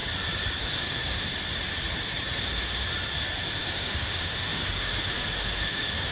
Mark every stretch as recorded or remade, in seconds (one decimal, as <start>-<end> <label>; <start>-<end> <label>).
0.0-0.6 recorded; 0.6-1.3 remade; 1.3-2.4 recorded; 2.4-2.9 remade; 2.9-3.5 recorded; 3.5-6.1 remade